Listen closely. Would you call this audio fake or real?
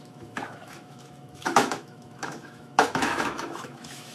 fake